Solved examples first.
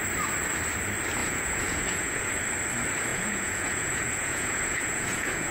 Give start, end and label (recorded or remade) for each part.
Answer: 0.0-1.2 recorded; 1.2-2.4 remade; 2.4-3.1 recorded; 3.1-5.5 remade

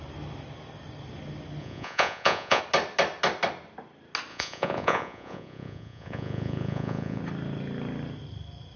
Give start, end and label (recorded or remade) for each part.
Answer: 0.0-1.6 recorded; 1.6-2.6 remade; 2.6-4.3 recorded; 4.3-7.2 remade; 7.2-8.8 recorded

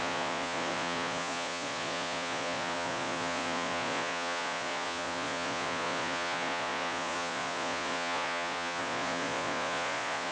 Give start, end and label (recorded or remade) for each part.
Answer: 0.0-10.3 remade